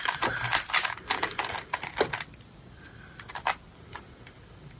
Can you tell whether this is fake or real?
real